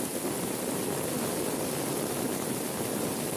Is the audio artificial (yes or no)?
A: no